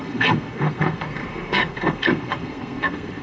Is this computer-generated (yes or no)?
yes